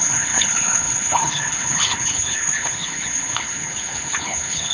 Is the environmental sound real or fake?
fake